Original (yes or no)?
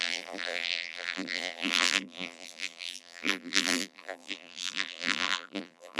no